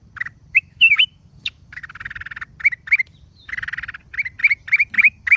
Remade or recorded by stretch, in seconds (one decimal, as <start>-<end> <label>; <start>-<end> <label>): 0.0-0.5 recorded; 0.5-1.8 remade; 1.8-5.0 recorded; 5.0-5.4 remade